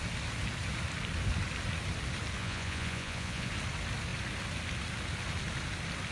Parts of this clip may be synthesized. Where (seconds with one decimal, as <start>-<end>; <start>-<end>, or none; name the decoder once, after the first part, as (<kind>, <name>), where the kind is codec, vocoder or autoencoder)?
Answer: 2.4-3.5 (vocoder, Vocos)